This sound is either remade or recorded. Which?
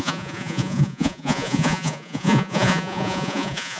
remade